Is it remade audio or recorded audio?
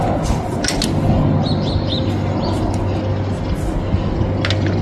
recorded